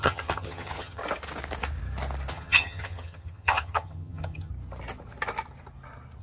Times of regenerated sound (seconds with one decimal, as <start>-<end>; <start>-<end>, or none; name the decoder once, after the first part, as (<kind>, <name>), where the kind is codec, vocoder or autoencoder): 0.0-1.0 (vocoder, HiFi-GAN); 2.3-4.5